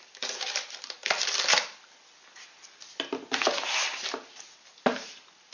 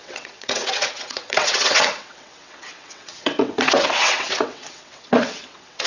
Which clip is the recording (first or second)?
first